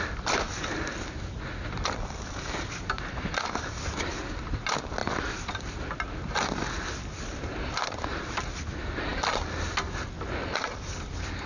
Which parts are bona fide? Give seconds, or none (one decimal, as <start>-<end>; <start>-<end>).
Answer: 0.0-11.5

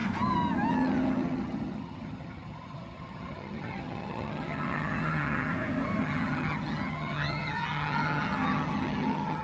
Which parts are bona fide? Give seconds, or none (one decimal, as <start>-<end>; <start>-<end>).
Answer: 0.0-0.7; 5.5-6.0

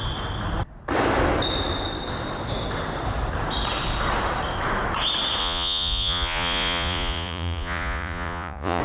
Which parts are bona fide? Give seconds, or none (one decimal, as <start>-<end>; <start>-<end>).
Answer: 0.0-5.4

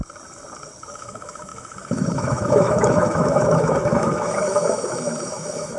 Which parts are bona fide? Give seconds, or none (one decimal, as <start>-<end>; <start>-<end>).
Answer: 0.0-0.9

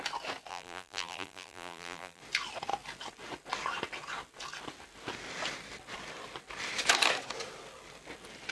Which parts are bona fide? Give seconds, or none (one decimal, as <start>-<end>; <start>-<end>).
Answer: 0.0-0.5; 2.2-8.5

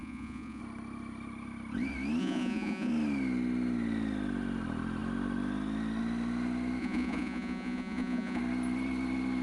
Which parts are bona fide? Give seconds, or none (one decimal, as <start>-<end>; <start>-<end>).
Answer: 0.6-2.2; 2.9-6.8; 8.4-9.4